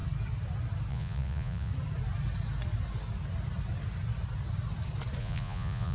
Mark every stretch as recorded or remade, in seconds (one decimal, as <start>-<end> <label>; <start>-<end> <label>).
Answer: 0.0-0.9 recorded; 0.9-1.7 remade; 1.7-5.2 recorded; 5.2-5.9 remade